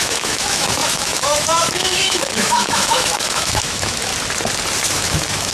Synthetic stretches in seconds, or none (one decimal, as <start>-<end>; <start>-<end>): 0.0-4.1; 4.9-5.5